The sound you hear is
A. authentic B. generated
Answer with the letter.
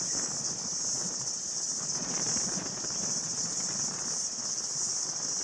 A